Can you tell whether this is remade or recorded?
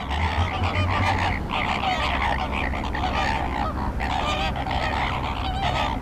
recorded